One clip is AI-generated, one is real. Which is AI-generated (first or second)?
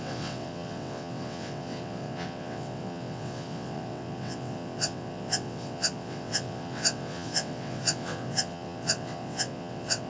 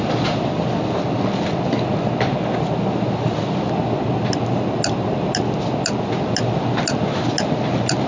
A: first